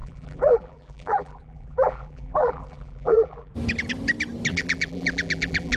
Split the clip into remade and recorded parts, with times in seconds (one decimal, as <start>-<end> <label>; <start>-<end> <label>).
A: 0.0-3.5 remade; 3.5-4.5 recorded; 4.5-5.8 remade